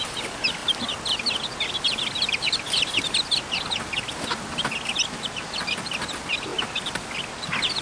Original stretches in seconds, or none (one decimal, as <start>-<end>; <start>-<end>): 0.0-7.8